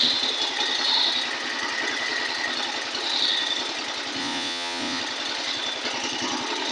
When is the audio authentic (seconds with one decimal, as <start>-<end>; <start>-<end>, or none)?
0.0-4.2; 5.0-6.7